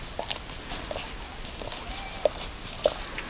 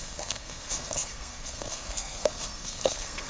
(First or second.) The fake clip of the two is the second